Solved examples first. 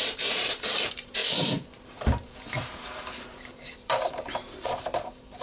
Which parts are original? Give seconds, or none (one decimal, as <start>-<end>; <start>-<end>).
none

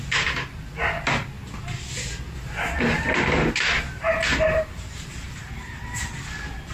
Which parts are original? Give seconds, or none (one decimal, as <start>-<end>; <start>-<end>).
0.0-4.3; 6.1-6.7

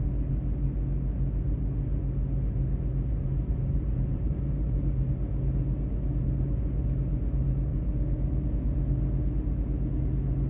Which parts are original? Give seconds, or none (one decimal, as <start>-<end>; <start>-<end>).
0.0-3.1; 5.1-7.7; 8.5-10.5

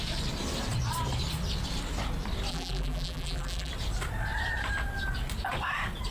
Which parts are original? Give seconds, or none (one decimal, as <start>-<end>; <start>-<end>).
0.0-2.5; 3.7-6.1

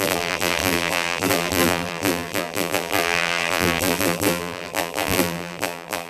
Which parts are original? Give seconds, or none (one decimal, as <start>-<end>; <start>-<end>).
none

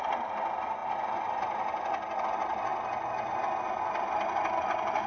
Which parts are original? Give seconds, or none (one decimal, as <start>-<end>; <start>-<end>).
0.0-5.1